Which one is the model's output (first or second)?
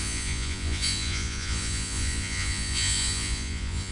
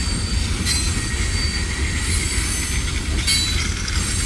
first